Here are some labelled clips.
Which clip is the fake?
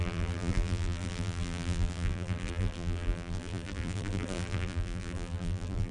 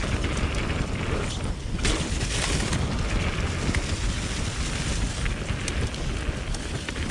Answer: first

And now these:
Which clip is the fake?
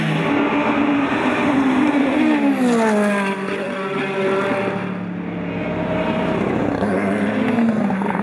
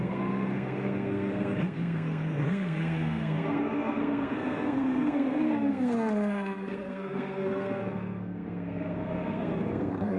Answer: second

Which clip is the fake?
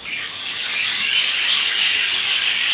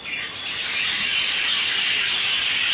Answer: first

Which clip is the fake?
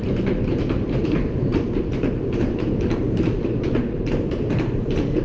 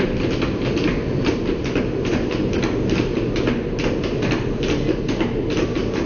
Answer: first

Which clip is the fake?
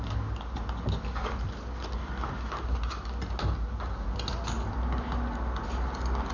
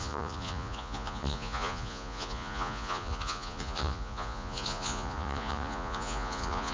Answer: second